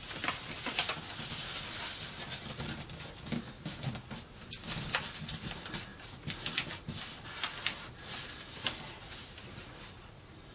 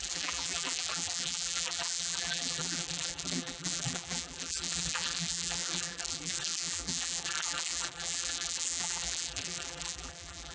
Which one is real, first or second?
first